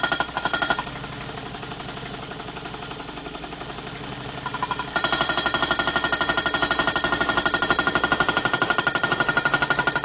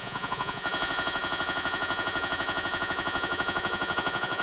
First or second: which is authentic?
first